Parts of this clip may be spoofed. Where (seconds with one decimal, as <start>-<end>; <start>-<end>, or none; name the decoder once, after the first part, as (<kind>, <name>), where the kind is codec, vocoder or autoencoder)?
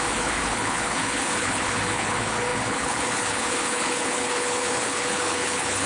0.0-5.9 (codec, HILCodec)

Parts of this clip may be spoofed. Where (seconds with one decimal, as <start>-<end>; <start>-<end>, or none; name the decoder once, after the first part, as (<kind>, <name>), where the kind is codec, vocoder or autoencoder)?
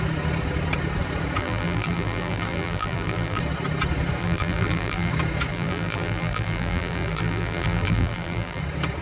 1.4-3.4 (vocoder, BigVGAN v2); 4.2-5.1; 5.5-8.6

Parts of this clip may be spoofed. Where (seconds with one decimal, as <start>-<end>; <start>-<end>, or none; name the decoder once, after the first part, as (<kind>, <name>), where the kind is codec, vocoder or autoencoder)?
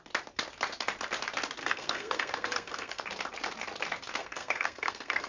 1.6-3.0 (codec, SNAC); 4.2-5.3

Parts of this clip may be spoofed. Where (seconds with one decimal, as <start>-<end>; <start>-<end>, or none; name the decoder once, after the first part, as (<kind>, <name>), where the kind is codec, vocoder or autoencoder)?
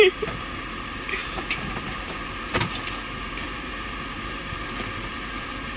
0.0-5.8 (vocoder, BigVGAN v2)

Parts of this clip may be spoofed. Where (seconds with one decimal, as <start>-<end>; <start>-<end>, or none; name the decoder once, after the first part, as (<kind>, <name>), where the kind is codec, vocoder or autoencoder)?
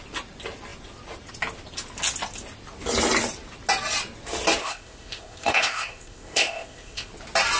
4.6-7.1 (codec, ZipCodec)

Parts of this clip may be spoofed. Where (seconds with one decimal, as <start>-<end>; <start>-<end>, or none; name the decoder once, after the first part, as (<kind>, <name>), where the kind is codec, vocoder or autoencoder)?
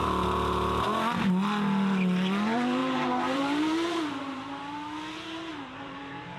2.8-4.6 (vocoder, BigVGAN v2); 5.5-6.4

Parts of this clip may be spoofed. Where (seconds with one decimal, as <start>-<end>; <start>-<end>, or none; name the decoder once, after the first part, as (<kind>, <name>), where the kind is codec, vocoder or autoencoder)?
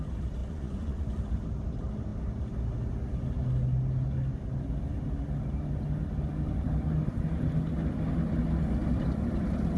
0.4-1.2 (vocoder, Vocos)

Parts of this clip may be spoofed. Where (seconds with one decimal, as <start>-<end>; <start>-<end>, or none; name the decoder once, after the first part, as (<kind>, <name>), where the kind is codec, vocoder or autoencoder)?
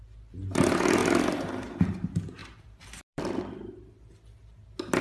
1.0-1.8 (vocoder, BigVGAN v2); 2.4-3.4